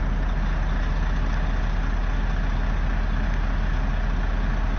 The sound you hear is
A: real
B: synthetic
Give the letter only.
A